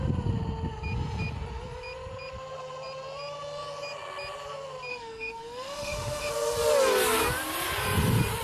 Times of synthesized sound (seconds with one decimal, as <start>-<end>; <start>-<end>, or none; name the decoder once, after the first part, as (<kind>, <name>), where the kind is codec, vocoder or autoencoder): 4.9-6.3 (autoencoder, DAC-VAE)